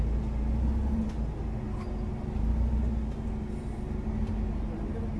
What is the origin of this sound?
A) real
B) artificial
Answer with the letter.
A